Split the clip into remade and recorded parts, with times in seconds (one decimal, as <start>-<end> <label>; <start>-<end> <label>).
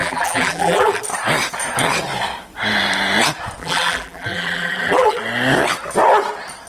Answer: 0.0-1.0 remade; 1.0-3.6 recorded; 3.6-5.2 remade; 5.2-6.7 recorded